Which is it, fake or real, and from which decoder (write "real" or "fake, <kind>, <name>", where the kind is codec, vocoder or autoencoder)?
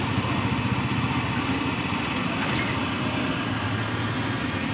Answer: real